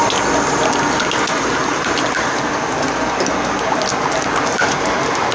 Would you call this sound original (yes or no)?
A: yes